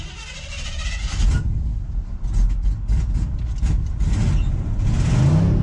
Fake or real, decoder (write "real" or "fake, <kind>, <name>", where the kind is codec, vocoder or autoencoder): real